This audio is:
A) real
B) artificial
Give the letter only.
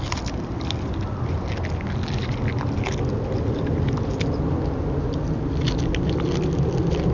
A